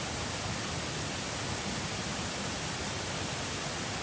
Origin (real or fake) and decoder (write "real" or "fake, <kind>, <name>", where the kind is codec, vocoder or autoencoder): real